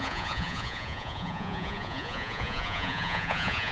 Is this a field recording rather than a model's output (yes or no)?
no